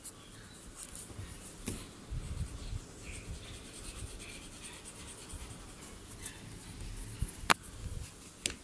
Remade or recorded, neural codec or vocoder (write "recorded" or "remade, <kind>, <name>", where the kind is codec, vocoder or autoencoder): recorded